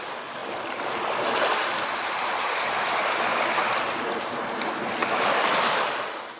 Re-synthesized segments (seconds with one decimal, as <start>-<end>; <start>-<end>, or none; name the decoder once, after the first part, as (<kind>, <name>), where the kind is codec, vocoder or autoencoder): 0.4-2.6 (vocoder, BigVGAN v2); 3.3-4.3; 5.0-6.4